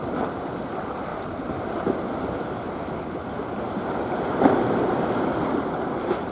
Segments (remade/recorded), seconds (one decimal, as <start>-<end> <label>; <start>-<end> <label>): 0.0-5.3 recorded; 5.3-6.3 remade